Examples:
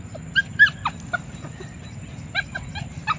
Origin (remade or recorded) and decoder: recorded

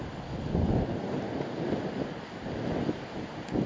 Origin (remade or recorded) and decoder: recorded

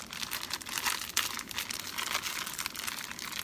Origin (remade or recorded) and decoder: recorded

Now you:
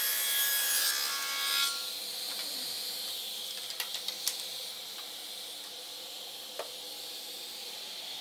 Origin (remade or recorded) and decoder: recorded